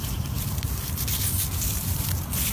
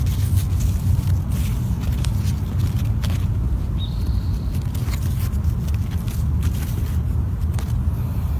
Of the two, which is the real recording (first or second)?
second